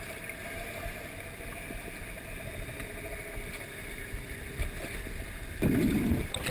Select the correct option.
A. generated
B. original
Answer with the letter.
B